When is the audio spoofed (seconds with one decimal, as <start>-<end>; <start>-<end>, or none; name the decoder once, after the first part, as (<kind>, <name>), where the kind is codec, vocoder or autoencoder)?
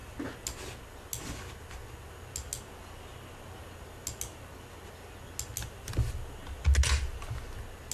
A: none